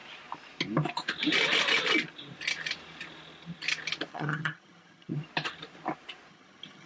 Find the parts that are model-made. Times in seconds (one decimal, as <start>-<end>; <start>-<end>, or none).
4.1-5.1; 6.3-6.9